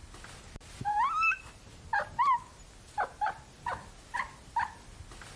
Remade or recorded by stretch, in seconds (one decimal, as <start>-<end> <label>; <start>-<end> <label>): 0.0-5.4 recorded